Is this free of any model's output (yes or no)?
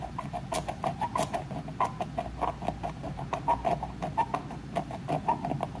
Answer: yes